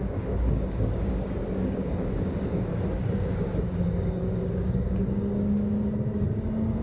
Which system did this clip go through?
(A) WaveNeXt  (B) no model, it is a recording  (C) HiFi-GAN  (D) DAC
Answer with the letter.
D